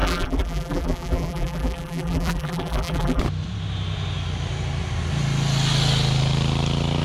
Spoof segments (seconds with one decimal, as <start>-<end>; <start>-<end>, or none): 0.0-3.2